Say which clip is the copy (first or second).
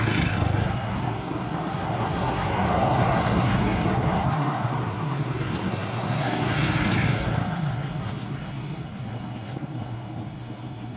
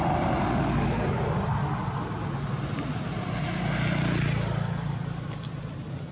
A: first